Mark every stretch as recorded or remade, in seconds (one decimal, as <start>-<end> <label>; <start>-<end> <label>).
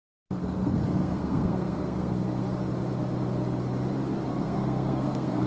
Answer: 0.0-0.4 recorded; 0.4-2.4 remade; 2.4-4.3 recorded; 4.3-5.5 remade